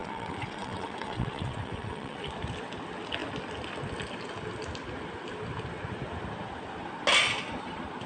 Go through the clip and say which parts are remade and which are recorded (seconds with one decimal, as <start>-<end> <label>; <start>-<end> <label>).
0.0-2.3 remade; 2.3-8.1 recorded